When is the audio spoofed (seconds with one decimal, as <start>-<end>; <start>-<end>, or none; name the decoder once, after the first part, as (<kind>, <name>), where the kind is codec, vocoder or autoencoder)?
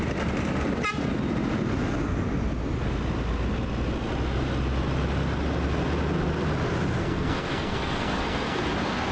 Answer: 7.0-8.6 (codec, SNAC)